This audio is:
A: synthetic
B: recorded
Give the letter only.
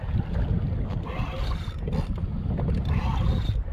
B